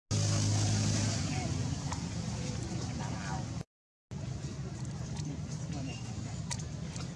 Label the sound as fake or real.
real